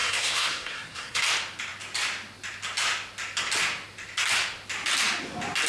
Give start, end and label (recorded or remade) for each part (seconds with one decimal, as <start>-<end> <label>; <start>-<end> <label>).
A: 0.0-1.2 remade; 1.2-5.7 recorded